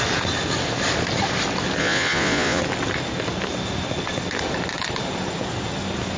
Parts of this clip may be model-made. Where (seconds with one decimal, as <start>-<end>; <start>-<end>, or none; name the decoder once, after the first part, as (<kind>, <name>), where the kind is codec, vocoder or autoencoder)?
1.8-2.6 (vocoder, Vocos)